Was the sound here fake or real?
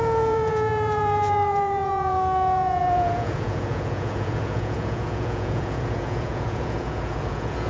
fake